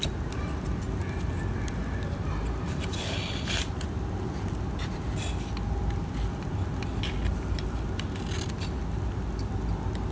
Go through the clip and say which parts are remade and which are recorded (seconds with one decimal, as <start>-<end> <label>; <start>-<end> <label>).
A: 0.0-10.1 recorded